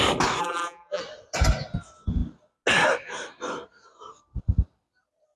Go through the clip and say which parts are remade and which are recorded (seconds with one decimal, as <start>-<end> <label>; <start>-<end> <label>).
0.0-0.4 recorded; 0.4-1.0 remade; 1.0-5.4 recorded